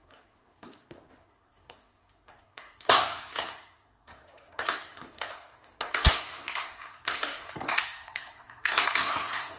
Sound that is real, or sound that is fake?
fake